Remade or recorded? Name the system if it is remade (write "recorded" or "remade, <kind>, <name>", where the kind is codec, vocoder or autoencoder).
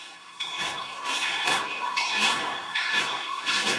remade, codec, SNAC